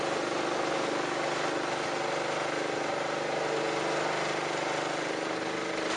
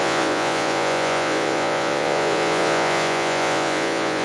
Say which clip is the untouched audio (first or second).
first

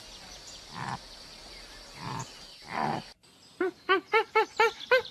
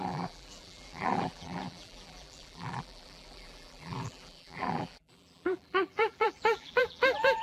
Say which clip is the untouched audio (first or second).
first